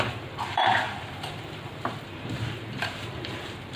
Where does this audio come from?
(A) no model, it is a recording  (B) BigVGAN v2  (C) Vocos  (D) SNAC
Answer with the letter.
B